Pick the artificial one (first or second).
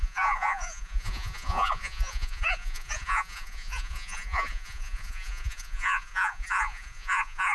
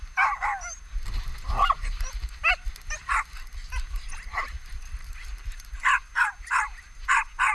first